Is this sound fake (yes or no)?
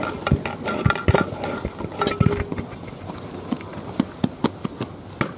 no